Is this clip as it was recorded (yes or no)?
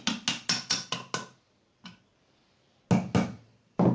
yes